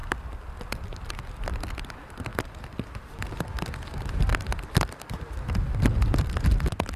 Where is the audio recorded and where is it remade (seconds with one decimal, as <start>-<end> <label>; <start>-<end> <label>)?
0.0-7.0 recorded